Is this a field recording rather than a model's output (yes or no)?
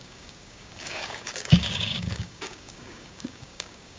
no